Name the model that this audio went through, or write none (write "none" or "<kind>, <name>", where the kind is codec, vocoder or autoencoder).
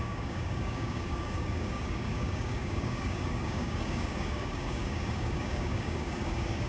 codec, DAC